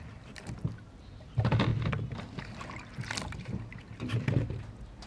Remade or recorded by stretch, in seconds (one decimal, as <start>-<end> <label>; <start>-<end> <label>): 0.0-5.1 recorded